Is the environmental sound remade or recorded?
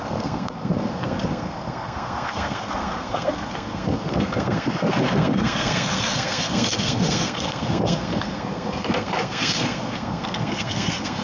remade